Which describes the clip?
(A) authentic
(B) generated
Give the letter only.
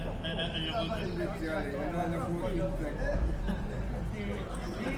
A